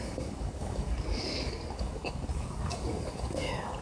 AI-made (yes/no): yes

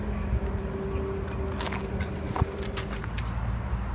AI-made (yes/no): no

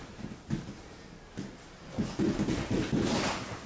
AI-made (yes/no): no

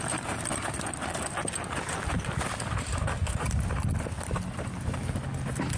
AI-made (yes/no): no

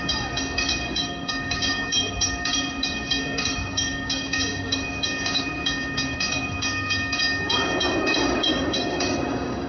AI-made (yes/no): yes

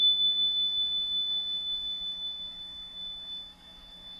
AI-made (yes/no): yes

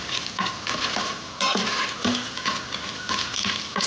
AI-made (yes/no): no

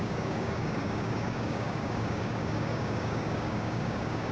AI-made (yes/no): yes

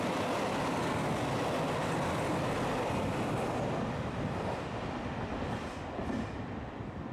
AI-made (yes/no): no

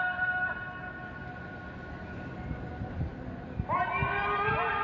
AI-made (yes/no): no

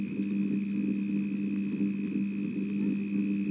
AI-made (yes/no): no